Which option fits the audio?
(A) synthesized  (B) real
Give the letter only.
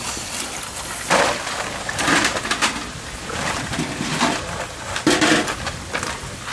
B